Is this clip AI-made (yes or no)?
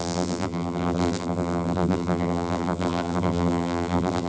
yes